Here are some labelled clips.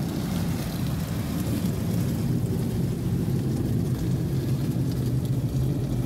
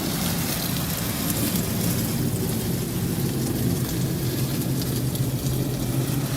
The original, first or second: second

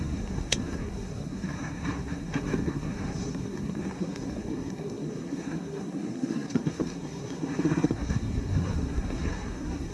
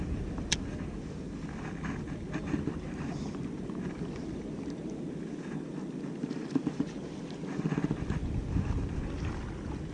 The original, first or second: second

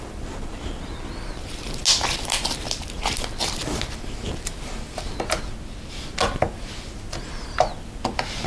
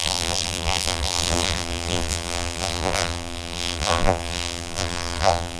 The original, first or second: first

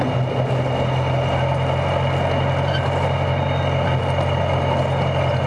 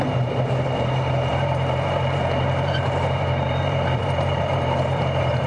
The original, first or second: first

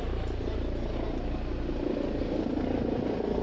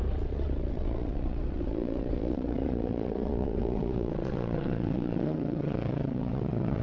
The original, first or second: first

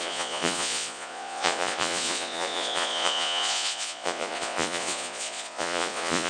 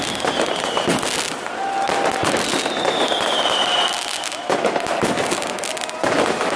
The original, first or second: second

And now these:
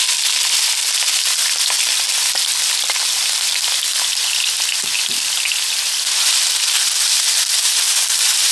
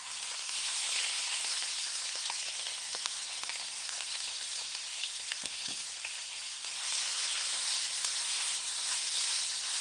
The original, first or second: first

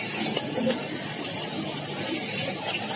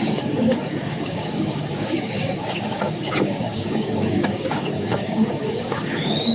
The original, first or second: first